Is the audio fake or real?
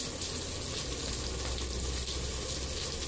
real